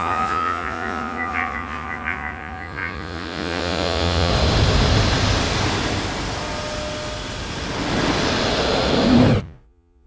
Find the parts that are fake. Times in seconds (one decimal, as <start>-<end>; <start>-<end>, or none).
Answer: 0.0-4.3; 9.4-10.1